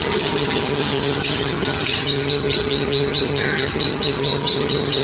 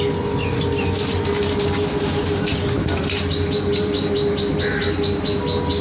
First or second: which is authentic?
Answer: second